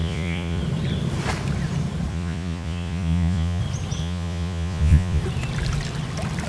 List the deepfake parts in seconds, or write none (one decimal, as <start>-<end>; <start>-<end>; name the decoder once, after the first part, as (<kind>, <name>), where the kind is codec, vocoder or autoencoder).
0.0-0.6 (vocoder, Vocos); 2.1-3.6; 4.0-5.2